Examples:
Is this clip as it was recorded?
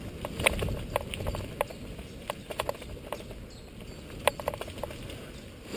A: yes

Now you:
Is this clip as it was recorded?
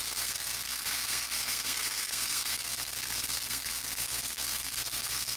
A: no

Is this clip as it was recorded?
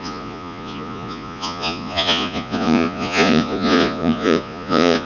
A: no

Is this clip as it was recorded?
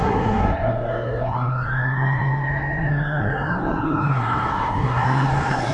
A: no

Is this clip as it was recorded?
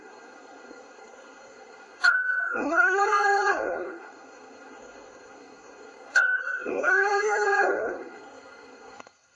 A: no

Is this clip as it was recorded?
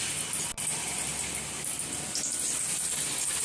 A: yes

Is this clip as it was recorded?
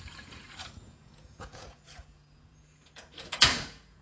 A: no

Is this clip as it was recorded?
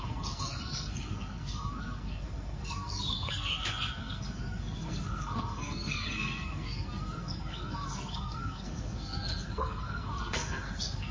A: no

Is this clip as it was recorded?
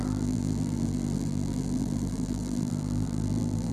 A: no